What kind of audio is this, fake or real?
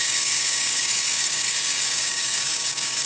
fake